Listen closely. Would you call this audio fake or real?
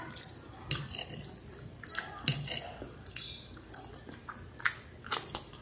real